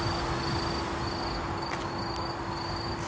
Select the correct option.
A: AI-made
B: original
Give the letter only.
B